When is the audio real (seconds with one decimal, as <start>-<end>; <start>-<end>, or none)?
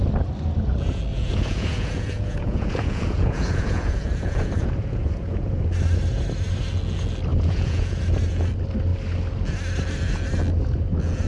0.0-1.1; 5.6-7.3; 8.0-11.3